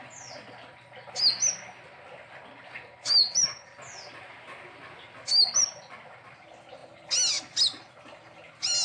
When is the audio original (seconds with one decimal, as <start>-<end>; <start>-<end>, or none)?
0.0-8.8